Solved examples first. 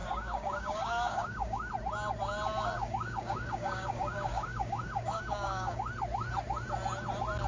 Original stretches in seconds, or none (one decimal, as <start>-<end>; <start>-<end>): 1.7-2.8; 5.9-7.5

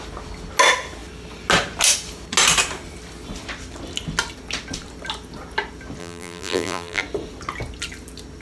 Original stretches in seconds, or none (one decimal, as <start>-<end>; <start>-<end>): 0.0-6.0; 7.0-8.4

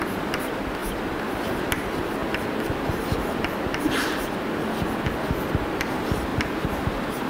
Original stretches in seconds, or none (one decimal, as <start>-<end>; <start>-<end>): 0.0-2.2; 3.4-6.3

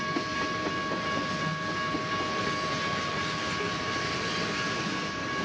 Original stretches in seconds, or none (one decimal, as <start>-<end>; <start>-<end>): 0.0-5.4

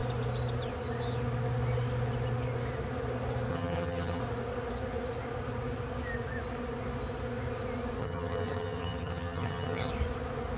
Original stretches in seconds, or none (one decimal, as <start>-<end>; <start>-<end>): 0.0-3.5; 4.2-8.0; 9.9-10.6